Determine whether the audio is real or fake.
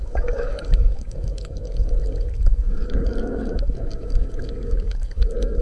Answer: fake